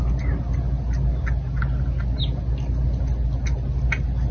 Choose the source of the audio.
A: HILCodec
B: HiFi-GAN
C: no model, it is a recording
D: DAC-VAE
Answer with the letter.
C